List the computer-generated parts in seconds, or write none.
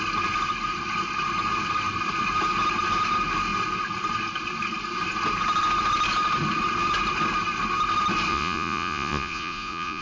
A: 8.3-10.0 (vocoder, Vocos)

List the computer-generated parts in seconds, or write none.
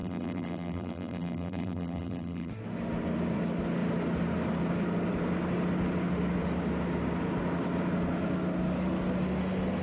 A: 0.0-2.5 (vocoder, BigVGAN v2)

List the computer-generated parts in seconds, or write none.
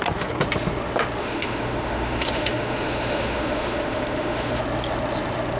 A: 1.2-4.6 (autoencoder, DAC-VAE)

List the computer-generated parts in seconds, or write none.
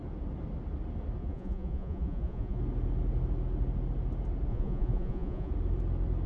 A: 1.2-2.6 (vocoder, Vocos); 4.5-5.5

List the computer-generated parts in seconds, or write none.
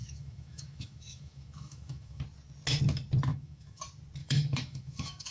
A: 0.0-2.2 (autoencoder, DAC-VAE); 3.3-3.8; 4.2-5.3